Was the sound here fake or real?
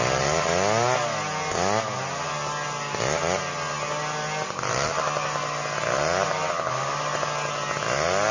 real